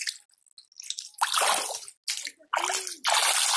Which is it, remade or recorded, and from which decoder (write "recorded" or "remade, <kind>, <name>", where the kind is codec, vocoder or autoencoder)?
recorded